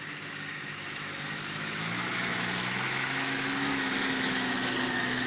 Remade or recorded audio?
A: remade